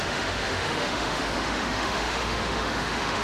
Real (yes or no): no